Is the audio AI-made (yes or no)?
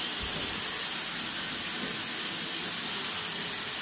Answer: no